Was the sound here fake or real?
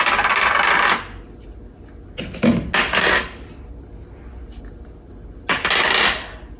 real